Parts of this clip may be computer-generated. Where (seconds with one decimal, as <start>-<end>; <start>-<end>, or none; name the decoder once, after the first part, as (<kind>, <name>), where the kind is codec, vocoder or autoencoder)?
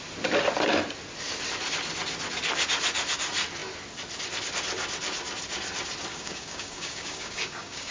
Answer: 6.1-7.9 (codec, DAC)